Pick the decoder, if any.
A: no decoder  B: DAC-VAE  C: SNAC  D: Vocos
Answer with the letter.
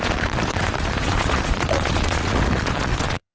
D